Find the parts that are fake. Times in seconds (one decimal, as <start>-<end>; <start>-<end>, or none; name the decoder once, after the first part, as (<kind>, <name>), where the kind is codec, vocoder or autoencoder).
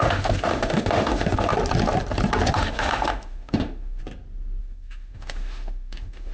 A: 0.0-1.5 (autoencoder, DAC-VAE); 2.5-4.0; 4.6-6.3